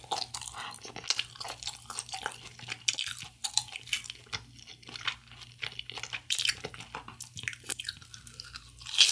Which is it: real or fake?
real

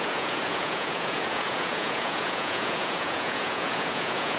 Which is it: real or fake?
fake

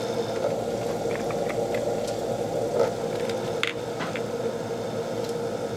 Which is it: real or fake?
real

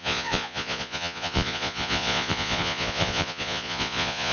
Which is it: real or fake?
fake